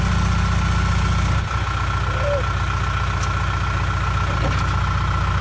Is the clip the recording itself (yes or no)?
yes